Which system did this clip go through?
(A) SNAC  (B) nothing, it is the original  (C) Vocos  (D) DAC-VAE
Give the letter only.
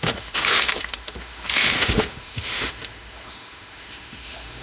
D